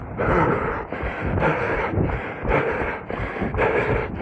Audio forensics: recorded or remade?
recorded